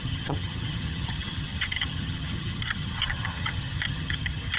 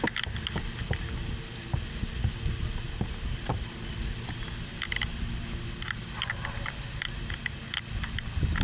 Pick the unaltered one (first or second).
second